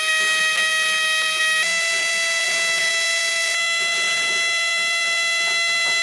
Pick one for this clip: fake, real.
real